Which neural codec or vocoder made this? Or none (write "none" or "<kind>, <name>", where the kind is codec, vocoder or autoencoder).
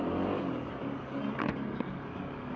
codec, DAC